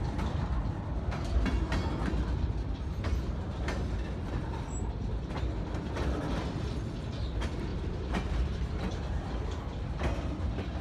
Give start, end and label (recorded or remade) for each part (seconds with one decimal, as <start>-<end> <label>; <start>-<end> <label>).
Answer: 0.0-7.7 recorded; 7.7-8.6 remade; 8.6-10.8 recorded